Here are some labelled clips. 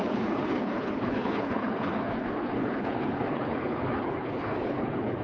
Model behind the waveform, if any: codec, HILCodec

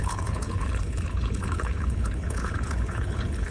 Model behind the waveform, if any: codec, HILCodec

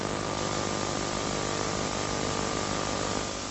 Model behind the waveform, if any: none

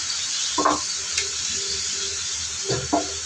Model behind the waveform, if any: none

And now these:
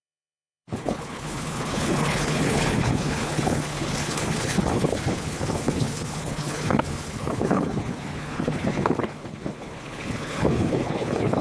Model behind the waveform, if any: codec, HILCodec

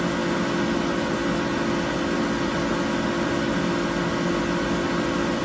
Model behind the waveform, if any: none